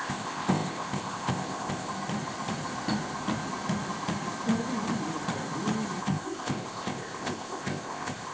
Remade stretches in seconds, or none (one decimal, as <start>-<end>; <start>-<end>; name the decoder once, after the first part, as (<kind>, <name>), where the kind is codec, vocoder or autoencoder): 0.0-1.9 (codec, ZipCodec); 6.0-8.3